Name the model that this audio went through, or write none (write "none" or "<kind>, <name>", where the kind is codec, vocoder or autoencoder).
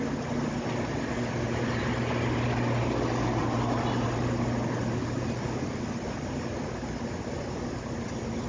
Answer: none